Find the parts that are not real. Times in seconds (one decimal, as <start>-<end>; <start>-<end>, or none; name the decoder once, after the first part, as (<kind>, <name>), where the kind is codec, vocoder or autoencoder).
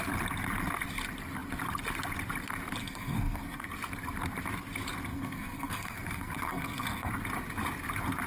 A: 2.8-3.7 (codec, SNAC); 5.1-7.1